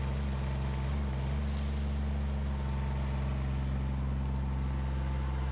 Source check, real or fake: real